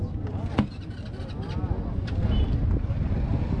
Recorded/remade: recorded